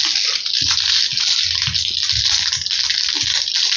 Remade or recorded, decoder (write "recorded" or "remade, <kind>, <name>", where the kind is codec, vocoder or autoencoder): recorded